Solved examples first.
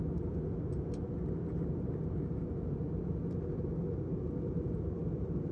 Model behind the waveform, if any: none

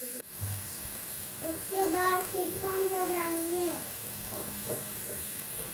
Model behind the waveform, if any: codec, DAC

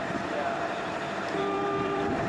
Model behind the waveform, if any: vocoder, BigVGAN v2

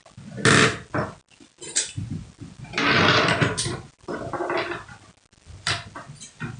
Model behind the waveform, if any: none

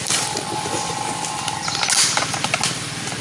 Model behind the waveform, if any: none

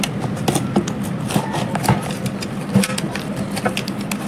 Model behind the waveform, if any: none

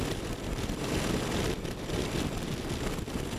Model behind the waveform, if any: none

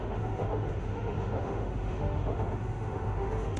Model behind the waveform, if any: autoencoder, DAC-VAE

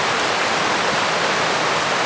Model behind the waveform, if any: none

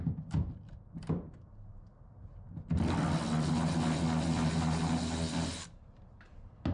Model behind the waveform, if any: none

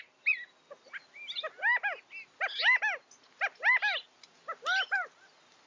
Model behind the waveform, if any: none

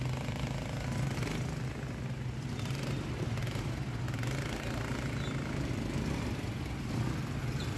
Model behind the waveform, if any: none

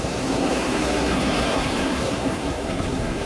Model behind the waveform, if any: codec, SNAC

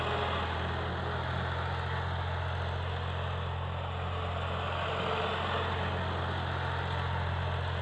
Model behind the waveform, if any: none